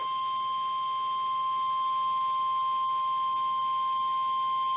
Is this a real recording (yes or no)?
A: yes